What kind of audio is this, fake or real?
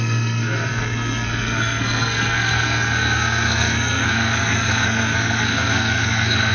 fake